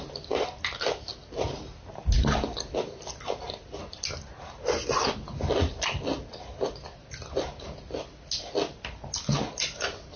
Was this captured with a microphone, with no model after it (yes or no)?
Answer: yes